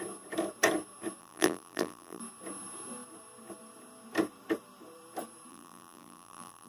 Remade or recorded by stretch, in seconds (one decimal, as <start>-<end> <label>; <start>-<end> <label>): 0.0-1.2 recorded; 1.2-2.2 remade; 2.2-5.5 recorded; 5.5-6.7 remade